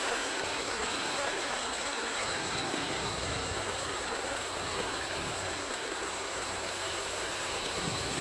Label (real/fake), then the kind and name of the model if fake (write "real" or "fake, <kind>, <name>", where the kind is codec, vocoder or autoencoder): fake, codec, SNAC